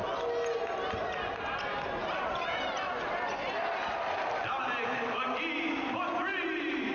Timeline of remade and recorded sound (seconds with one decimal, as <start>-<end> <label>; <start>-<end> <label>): 0.0-2.0 recorded; 2.0-4.5 remade; 4.5-6.3 recorded; 6.3-6.9 remade